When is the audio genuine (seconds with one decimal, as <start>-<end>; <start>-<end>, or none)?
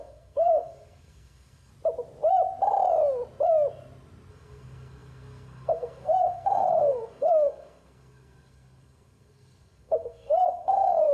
1.7-4.3